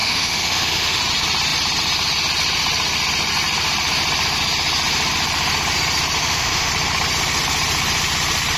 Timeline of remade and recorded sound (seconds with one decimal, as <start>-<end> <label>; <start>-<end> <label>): 0.0-1.0 remade; 1.0-6.2 recorded; 6.2-6.7 remade; 6.7-8.6 recorded